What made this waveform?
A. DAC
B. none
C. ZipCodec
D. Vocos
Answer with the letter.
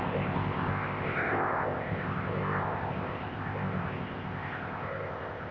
C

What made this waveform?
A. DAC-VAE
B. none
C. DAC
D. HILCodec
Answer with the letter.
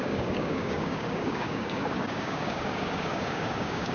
C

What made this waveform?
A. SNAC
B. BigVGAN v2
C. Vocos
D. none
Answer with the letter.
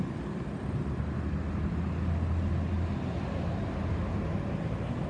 D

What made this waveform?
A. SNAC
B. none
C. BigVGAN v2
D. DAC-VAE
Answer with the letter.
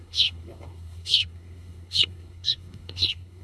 A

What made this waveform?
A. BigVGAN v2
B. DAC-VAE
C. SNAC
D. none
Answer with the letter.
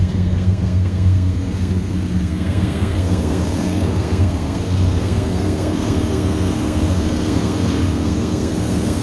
C